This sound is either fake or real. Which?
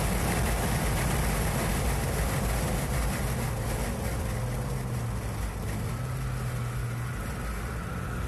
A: real